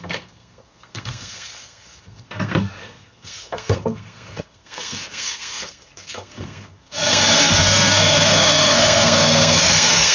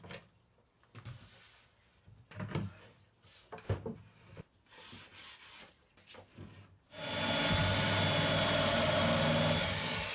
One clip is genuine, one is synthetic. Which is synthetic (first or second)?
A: first